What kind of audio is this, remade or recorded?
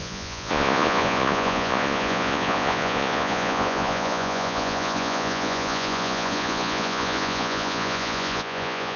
remade